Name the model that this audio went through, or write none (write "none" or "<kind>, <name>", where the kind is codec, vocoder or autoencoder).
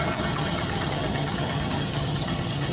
vocoder, HiFi-GAN